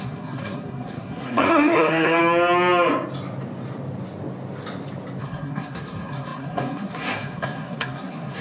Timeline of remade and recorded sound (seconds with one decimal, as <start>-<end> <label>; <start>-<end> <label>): 0.0-2.2 remade; 2.2-5.2 recorded; 5.2-8.4 remade